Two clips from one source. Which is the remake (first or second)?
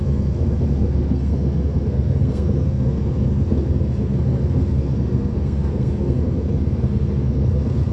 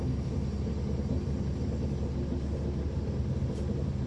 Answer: first